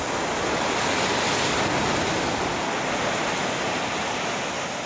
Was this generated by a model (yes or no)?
no